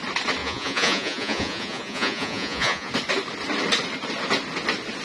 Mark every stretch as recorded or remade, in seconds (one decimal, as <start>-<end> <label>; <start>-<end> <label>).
0.0-0.4 recorded; 0.4-2.9 remade; 2.9-5.0 recorded